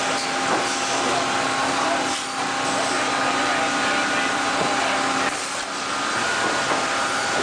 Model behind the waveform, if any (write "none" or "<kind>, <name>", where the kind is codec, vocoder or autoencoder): none